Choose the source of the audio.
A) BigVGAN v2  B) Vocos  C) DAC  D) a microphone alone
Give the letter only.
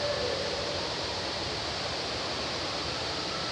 A